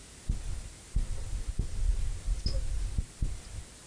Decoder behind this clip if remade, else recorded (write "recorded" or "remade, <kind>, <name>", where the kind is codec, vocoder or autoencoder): recorded